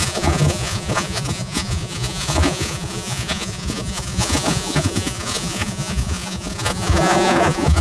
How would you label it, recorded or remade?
remade